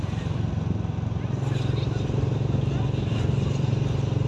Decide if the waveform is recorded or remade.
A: recorded